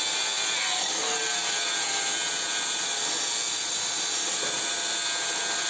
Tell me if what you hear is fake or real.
real